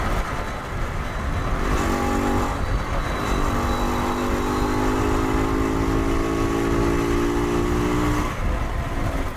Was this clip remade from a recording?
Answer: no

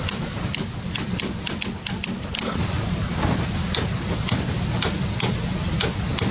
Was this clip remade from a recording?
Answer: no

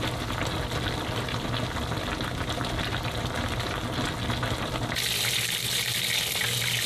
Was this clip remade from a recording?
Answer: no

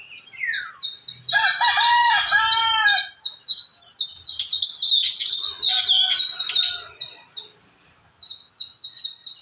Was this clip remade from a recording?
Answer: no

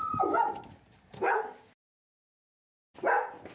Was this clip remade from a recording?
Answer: no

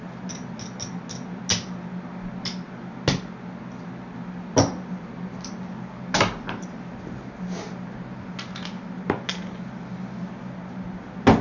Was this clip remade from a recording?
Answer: no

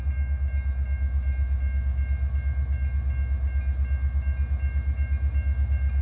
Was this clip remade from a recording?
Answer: no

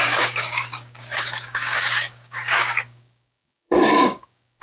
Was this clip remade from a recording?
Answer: yes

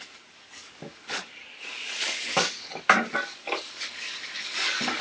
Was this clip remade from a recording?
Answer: yes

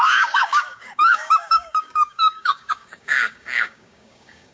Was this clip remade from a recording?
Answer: yes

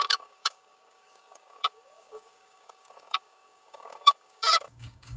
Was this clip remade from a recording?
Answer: yes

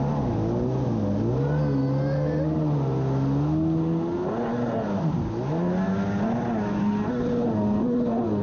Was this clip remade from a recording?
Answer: no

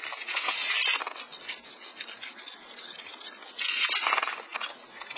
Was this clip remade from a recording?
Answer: no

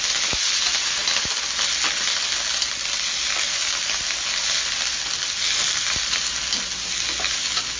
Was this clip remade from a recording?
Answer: no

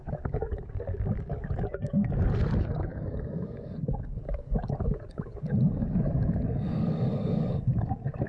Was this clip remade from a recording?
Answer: yes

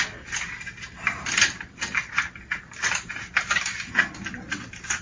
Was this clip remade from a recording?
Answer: no